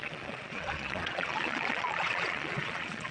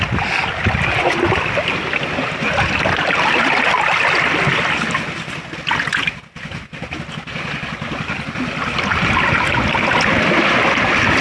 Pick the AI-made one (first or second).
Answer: first